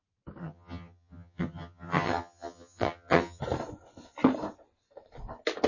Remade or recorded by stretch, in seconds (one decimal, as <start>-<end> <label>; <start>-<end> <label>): 0.0-0.4 recorded; 0.4-3.4 remade; 3.4-5.7 recorded

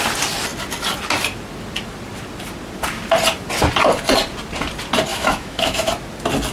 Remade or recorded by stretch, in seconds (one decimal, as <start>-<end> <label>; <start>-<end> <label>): 0.0-5.1 recorded; 5.1-5.9 remade; 5.9-6.5 recorded

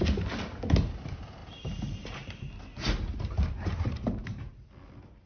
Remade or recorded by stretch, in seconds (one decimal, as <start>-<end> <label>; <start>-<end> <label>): 0.0-1.4 recorded; 1.4-2.5 remade; 2.5-3.1 recorded; 3.1-4.2 remade; 4.2-5.3 recorded

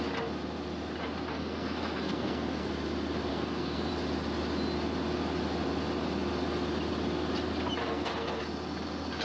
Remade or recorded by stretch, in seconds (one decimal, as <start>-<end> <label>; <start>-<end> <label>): 0.0-1.3 recorded; 1.3-2.7 remade; 2.7-3.3 recorded; 3.3-3.9 remade; 3.9-7.8 recorded; 7.8-8.4 remade; 8.4-9.2 recorded

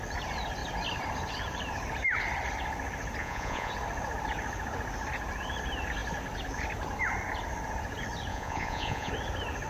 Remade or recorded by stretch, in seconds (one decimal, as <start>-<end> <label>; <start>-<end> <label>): 0.0-3.2 recorded; 3.2-3.7 remade; 3.7-8.3 recorded; 8.3-9.1 remade; 9.1-9.7 recorded

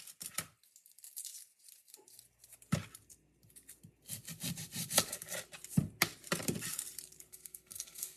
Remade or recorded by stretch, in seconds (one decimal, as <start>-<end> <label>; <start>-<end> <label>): 0.0-7.3 recorded; 7.3-8.2 remade

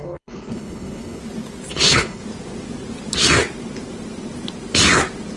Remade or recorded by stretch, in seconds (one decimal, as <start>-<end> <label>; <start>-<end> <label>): 0.0-1.2 remade; 1.2-1.7 recorded; 1.7-2.2 remade; 2.2-5.4 recorded

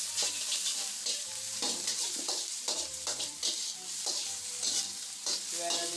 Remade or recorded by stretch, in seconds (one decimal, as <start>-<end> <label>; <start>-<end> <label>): 0.0-0.7 recorded; 0.7-3.3 remade; 3.3-6.0 recorded